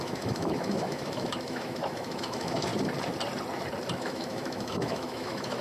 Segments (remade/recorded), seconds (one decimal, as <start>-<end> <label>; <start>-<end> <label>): 0.0-2.7 remade; 2.7-3.9 recorded; 3.9-5.6 remade